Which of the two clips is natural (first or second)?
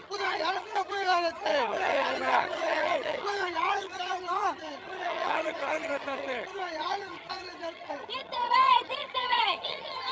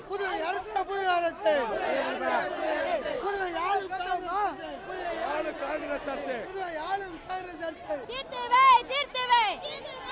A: second